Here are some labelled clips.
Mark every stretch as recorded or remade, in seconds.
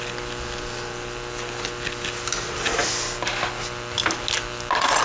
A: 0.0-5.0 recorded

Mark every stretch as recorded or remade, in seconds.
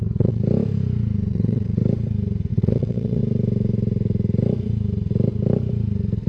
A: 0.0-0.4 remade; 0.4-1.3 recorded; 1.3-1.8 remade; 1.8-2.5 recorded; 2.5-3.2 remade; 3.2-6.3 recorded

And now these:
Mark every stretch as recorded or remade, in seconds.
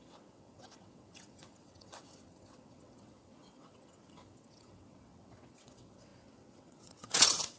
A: 0.0-7.6 remade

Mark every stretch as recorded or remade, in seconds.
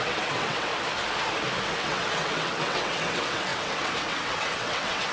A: 0.0-0.7 remade; 0.7-1.7 recorded; 1.7-5.1 remade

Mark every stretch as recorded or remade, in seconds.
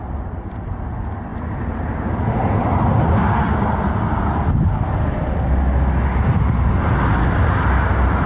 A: 0.0-8.3 recorded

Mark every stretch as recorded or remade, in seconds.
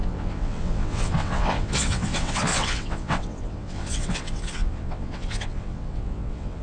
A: 0.0-6.6 remade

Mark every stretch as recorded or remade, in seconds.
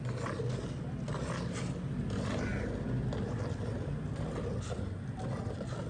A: 0.0-5.9 recorded